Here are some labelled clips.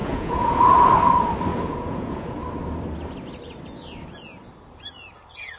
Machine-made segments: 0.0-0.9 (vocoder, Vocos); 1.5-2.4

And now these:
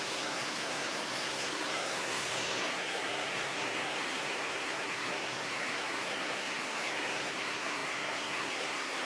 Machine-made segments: 0.0-9.0 (codec, SNAC)

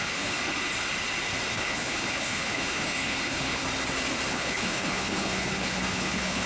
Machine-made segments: 0.0-0.4 (codec, HILCodec); 1.5-3.6; 4.3-6.5